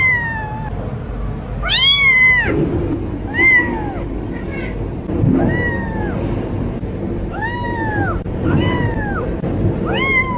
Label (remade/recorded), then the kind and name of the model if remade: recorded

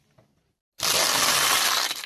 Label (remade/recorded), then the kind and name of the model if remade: recorded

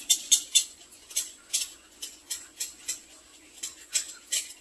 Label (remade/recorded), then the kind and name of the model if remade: remade, vocoder, Vocos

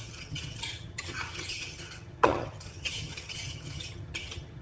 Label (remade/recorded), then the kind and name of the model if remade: remade, vocoder, HiFi-GAN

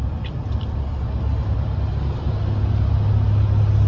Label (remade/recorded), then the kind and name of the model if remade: recorded